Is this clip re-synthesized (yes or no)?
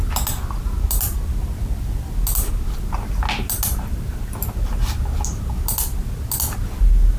no